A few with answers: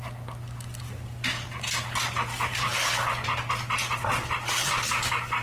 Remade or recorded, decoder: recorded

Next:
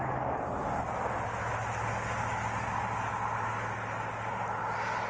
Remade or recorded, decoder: recorded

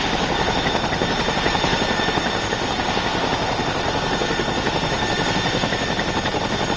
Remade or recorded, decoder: recorded